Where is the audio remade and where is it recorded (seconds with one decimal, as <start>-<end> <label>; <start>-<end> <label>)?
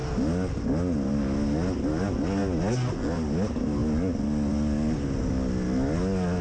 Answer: 0.0-6.4 recorded